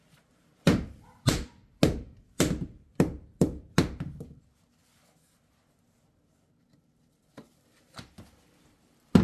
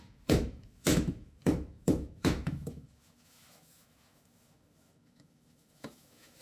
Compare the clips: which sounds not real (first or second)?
second